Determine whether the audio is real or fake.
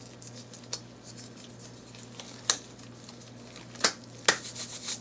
real